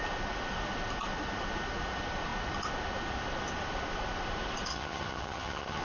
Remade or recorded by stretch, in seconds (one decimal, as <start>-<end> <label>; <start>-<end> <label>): 0.0-4.7 recorded; 4.7-5.8 remade